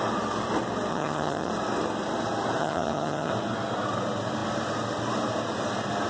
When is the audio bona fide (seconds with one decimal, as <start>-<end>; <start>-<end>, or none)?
0.0-0.9; 1.5-2.6; 3.3-6.1